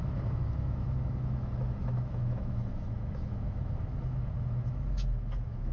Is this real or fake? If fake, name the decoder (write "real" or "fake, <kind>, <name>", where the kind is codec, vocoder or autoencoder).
fake, autoencoder, DAC-VAE